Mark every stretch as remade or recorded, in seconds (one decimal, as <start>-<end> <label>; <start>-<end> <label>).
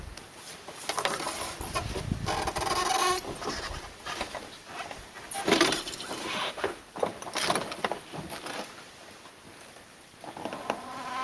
0.0-6.2 recorded; 6.2-6.8 remade; 6.8-11.2 recorded